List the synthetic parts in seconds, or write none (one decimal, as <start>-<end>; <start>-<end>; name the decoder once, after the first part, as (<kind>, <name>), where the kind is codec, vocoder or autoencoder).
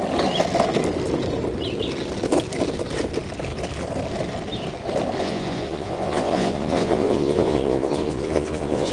5.2-8.9 (vocoder, Vocos)